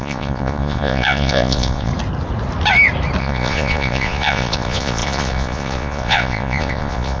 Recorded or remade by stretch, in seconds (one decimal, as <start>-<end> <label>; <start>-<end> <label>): 0.0-1.9 remade; 1.9-3.2 recorded; 3.2-7.2 remade